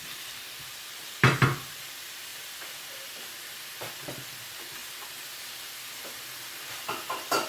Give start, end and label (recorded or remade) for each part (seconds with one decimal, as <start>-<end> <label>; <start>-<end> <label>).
0.0-7.5 recorded